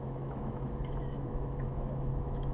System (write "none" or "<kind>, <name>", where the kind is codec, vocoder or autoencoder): autoencoder, DAC-VAE